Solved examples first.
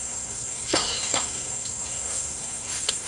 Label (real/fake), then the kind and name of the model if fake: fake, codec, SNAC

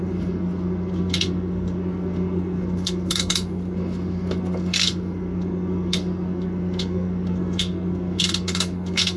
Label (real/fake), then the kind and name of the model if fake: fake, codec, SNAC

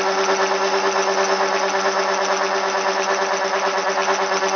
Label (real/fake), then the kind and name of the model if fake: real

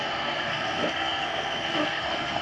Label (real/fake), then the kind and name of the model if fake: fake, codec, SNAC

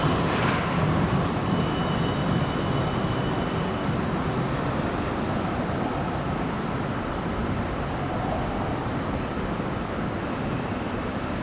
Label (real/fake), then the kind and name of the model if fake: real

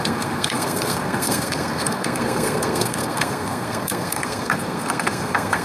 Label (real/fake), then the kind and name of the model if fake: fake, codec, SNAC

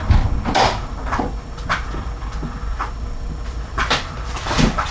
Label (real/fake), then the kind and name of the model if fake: real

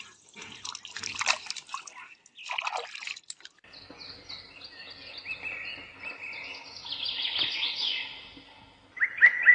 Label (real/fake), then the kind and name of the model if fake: real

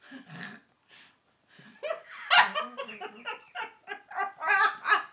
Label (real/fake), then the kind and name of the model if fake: real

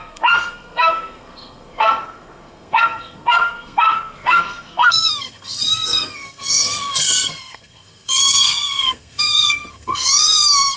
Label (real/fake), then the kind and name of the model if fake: fake, codec, SNAC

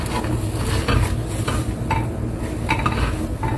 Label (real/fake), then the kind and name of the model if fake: real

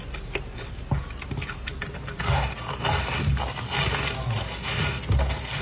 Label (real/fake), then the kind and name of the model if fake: real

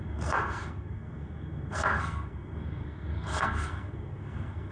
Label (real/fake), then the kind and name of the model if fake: fake, codec, SNAC